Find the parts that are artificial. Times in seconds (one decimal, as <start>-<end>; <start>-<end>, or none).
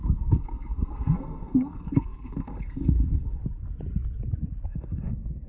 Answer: 0.0-3.4; 4.7-5.5